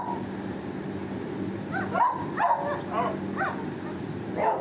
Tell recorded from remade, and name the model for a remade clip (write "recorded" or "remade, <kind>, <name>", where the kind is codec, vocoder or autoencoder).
recorded